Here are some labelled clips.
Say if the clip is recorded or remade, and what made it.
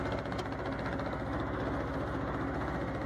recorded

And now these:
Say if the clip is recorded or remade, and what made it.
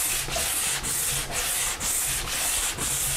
recorded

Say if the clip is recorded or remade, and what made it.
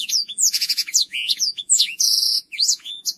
remade, vocoder, Vocos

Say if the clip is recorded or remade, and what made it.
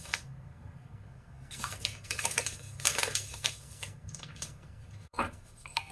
remade, codec, SNAC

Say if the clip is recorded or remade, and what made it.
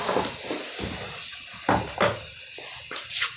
recorded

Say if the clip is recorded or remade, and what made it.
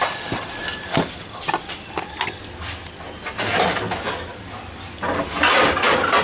recorded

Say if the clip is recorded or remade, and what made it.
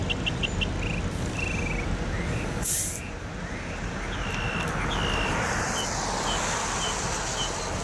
recorded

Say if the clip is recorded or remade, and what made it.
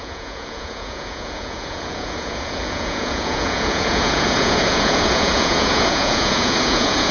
remade, vocoder, Vocos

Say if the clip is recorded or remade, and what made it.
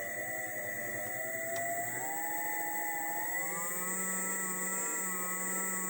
recorded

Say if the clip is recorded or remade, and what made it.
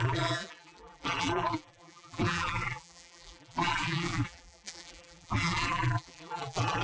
remade, vocoder, BigVGAN v2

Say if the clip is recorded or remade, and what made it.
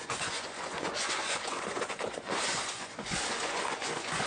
remade, vocoder, Vocos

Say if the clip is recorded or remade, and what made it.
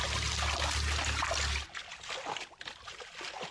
recorded